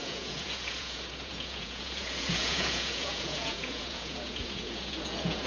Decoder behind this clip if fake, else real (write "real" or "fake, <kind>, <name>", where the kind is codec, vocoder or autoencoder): fake, vocoder, Vocos